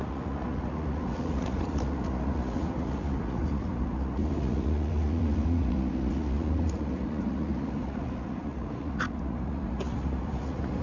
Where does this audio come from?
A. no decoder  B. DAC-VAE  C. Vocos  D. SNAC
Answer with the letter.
C